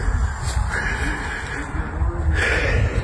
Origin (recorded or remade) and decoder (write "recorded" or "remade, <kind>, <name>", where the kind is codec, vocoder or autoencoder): recorded